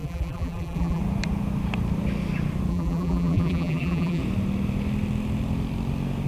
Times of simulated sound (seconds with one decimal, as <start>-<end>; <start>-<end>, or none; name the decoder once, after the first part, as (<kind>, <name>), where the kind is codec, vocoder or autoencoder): 0.0-1.0 (vocoder, BigVGAN v2); 2.7-4.2